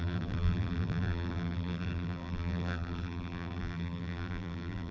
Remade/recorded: remade